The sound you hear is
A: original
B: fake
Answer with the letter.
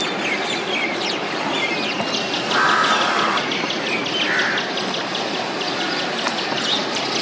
A